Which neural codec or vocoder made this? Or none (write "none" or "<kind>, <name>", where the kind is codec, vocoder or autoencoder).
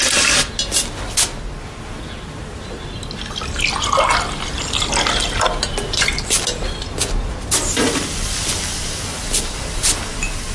none